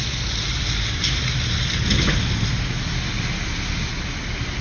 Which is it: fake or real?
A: real